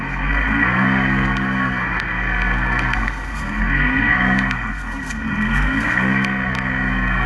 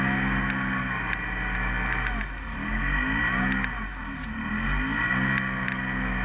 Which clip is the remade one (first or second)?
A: first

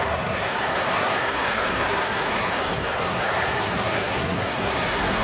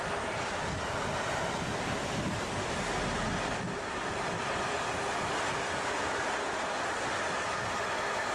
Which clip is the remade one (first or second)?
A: first